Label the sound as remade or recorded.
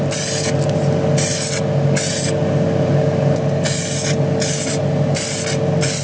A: recorded